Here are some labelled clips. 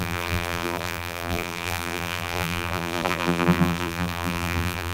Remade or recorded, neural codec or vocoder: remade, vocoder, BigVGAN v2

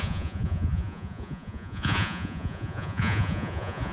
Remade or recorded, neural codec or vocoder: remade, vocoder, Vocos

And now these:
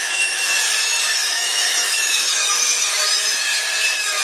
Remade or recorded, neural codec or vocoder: remade, autoencoder, DAC-VAE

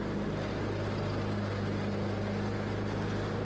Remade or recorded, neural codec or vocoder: recorded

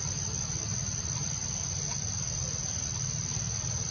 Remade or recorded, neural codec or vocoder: recorded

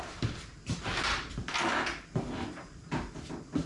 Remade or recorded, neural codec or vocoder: recorded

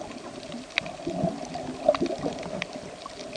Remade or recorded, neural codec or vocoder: recorded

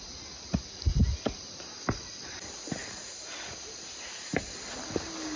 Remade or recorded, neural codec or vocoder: recorded